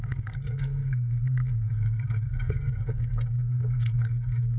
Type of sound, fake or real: fake